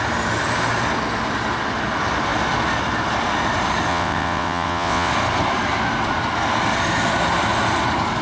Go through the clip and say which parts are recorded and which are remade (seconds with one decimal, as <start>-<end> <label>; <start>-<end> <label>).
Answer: 0.0-3.9 recorded; 3.9-5.1 remade; 5.1-8.2 recorded